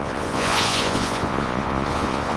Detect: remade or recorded remade